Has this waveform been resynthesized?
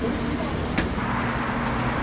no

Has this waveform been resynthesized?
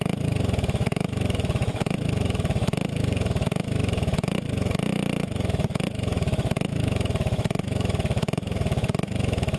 yes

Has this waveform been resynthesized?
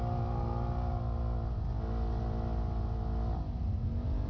no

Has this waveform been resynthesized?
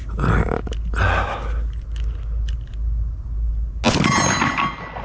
no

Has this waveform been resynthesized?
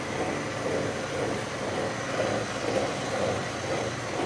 no